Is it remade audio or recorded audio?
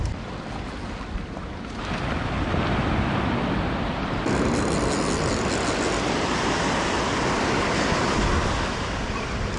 recorded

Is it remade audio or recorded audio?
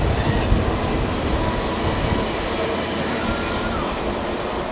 recorded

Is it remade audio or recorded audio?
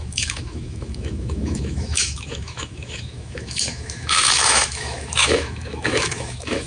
remade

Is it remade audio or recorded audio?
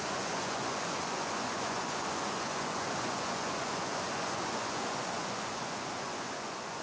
remade